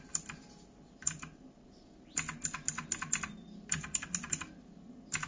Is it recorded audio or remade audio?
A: recorded